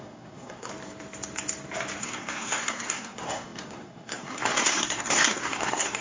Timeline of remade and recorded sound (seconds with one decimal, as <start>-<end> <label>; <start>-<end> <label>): 0.0-0.7 remade; 0.7-2.0 recorded; 2.0-6.0 remade